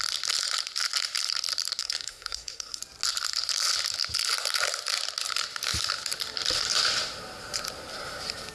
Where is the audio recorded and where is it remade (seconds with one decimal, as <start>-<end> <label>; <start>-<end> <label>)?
0.0-1.8 recorded; 1.8-2.8 remade; 2.8-8.5 recorded